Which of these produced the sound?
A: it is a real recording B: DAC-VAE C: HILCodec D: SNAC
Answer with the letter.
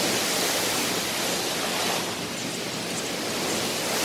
A